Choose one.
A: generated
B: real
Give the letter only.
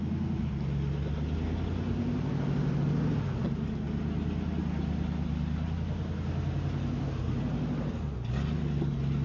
B